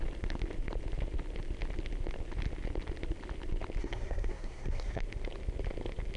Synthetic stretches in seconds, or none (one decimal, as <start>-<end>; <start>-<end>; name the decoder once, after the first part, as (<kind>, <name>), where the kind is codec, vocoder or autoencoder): 3.8-5.0 (codec, SNAC)